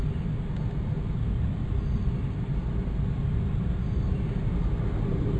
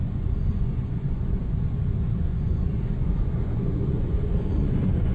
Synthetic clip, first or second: second